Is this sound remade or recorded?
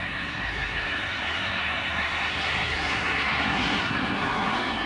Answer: remade